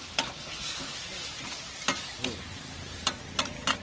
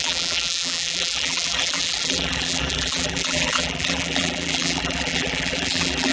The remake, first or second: second